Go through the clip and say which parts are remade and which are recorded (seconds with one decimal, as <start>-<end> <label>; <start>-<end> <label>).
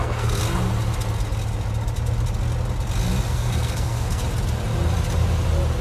0.0-0.4 remade; 0.4-3.3 recorded; 3.3-4.2 remade; 4.2-5.8 recorded